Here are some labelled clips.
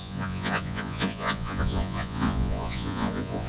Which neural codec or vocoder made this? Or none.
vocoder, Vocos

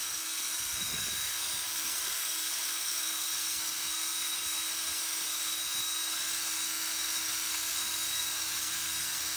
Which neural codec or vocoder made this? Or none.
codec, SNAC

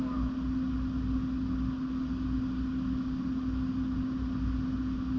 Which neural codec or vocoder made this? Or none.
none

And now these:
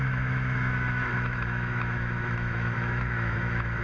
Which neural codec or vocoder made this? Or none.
autoencoder, DAC-VAE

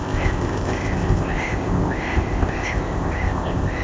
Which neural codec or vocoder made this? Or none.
codec, ZipCodec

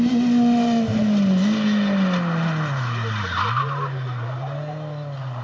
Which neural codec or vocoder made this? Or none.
none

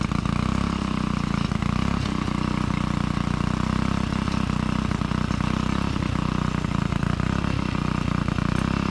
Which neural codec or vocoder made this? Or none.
none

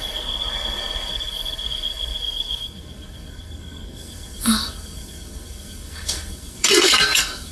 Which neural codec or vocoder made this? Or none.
codec, SNAC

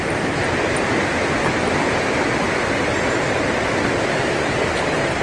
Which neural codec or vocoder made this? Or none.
none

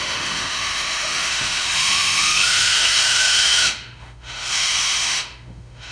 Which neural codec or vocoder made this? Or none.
autoencoder, DAC-VAE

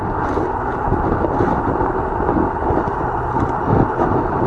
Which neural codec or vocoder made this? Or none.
none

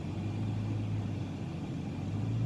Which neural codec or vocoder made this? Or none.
none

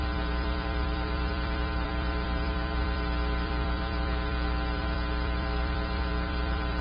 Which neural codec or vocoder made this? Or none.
vocoder, BigVGAN v2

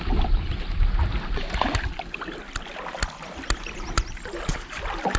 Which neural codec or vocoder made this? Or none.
none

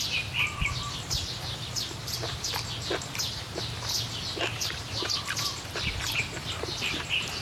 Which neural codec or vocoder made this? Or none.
vocoder, BigVGAN v2